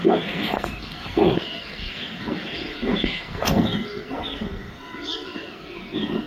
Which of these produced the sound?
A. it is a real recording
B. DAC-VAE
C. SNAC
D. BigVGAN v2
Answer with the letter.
C